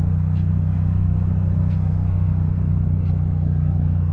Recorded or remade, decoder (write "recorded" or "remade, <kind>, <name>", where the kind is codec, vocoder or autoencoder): remade, codec, SNAC